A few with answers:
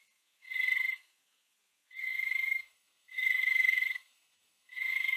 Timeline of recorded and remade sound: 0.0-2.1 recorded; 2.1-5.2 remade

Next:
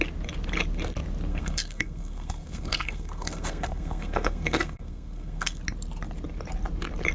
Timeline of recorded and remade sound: 0.0-1.3 recorded; 1.3-5.6 remade; 5.6-7.1 recorded

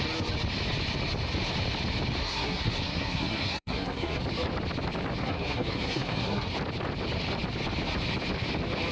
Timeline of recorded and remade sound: 0.0-2.2 recorded; 2.2-4.2 remade; 4.2-5.2 recorded; 5.2-6.5 remade; 6.5-8.9 recorded

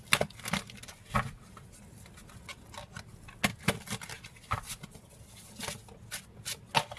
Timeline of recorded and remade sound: 0.0-7.0 recorded